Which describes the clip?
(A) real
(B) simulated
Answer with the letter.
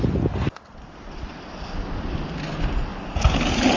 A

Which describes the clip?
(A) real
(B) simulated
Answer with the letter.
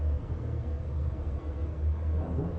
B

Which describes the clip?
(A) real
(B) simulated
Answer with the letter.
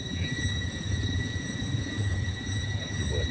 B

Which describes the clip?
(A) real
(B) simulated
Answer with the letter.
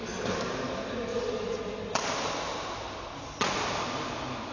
A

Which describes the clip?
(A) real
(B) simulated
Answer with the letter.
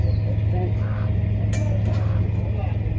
A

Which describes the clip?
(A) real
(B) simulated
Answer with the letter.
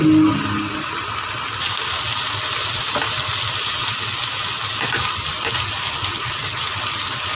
A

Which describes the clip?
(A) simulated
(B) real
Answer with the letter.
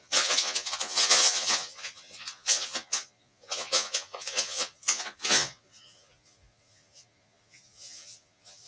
A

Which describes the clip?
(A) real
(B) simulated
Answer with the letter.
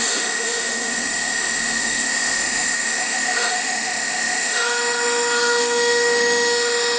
B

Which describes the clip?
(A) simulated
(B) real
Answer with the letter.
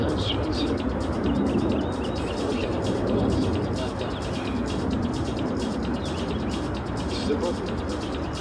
B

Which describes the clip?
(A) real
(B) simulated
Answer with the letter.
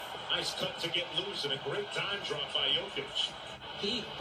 A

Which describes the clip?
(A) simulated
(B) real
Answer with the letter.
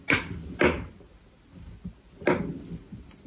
B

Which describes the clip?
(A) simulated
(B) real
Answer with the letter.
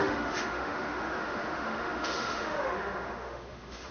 A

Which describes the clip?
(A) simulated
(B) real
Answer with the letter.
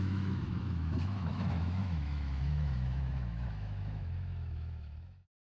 A